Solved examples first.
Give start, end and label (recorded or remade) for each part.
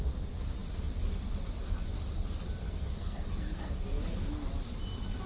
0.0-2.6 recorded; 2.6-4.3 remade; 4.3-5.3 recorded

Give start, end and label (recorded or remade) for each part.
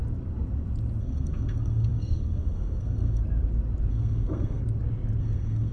0.0-1.0 recorded; 1.0-3.2 remade; 3.2-3.9 recorded; 3.9-4.6 remade; 4.6-5.2 recorded; 5.2-5.7 remade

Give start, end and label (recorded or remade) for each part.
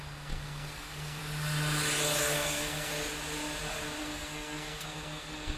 0.0-1.2 remade; 1.2-2.2 recorded; 2.2-2.9 remade; 2.9-4.0 recorded; 4.0-5.6 remade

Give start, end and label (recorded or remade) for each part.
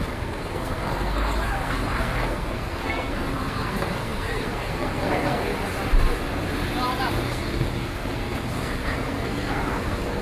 0.0-5.5 remade; 5.5-7.1 recorded; 7.1-10.2 remade